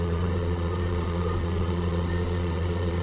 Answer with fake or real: fake